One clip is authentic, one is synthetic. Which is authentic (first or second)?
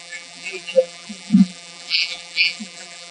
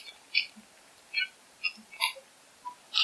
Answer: second